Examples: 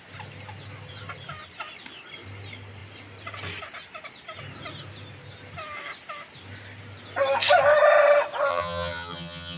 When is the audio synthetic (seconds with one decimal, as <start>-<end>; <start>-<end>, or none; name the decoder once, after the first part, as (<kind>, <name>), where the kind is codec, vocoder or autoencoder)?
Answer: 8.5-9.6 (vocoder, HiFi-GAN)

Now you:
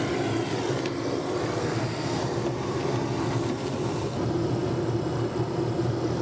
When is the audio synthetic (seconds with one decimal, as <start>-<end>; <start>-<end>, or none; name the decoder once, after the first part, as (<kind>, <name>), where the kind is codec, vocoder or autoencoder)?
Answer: 1.6-2.2 (codec, SNAC)

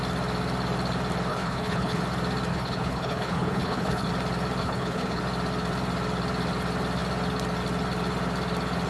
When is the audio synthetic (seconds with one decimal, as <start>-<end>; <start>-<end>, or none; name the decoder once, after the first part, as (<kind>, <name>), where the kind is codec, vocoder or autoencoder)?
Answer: 1.3-2.0 (codec, HILCodec); 2.5-4.1; 4.6-5.2

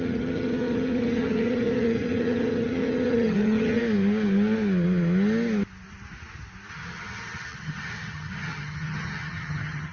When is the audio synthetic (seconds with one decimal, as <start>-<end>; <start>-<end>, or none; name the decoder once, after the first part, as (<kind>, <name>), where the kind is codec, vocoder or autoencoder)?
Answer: 0.0-3.8 (vocoder, HiFi-GAN); 6.7-9.9

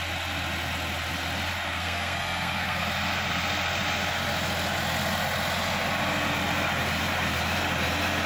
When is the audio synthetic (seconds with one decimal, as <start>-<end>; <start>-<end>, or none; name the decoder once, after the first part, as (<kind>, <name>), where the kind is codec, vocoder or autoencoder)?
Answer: 1.7-2.8 (codec, SNAC)